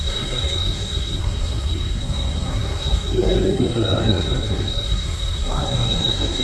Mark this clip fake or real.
fake